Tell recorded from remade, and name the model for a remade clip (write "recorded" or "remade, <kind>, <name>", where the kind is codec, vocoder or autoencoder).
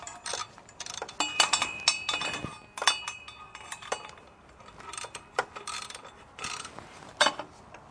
recorded